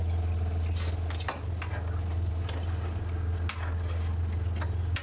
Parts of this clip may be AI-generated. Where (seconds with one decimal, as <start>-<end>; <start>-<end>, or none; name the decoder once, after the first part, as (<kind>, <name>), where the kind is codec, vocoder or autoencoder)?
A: none